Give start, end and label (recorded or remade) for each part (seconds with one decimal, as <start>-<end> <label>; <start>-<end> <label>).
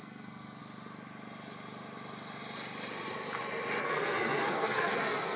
0.0-0.6 remade; 0.6-3.8 recorded; 3.8-5.4 remade